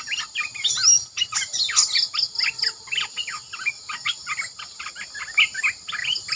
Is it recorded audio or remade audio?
recorded